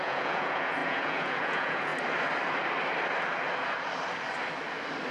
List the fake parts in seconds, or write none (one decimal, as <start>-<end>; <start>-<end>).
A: 0.0-1.9